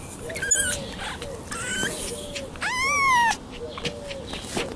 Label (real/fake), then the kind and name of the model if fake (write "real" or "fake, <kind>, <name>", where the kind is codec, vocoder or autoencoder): real